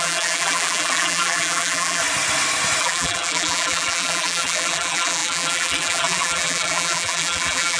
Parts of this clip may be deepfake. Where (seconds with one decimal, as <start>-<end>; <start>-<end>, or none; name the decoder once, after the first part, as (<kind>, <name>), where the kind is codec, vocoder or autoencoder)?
0.0-2.0 (vocoder, BigVGAN v2); 2.8-7.8